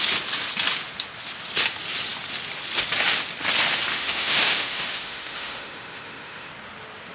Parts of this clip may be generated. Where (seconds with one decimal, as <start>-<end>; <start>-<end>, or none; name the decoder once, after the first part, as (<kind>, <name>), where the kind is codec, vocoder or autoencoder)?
3.9-6.5 (autoencoder, DAC-VAE)